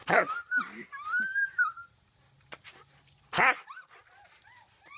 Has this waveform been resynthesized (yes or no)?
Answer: no